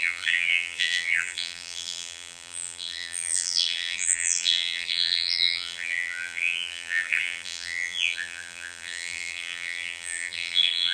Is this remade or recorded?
remade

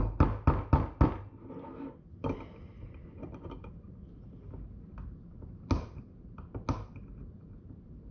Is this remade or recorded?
recorded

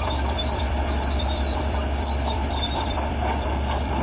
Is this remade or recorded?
remade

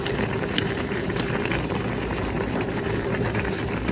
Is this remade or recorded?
remade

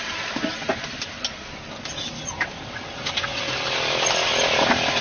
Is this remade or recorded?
recorded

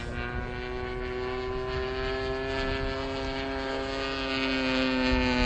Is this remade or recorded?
recorded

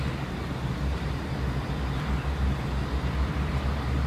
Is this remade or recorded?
remade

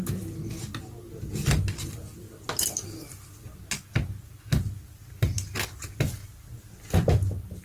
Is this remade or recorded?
recorded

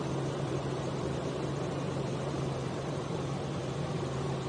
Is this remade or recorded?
remade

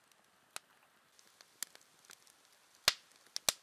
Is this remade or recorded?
recorded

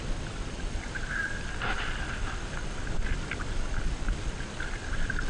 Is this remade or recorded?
remade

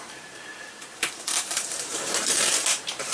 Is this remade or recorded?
remade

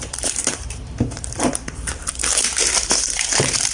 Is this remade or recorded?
remade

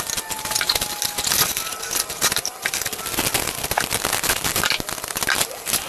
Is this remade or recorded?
recorded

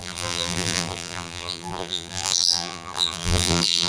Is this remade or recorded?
remade